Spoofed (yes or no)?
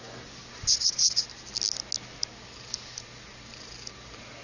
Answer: no